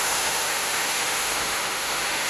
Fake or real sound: fake